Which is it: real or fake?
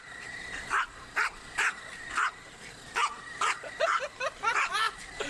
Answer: fake